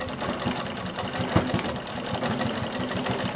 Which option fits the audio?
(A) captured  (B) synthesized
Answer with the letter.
A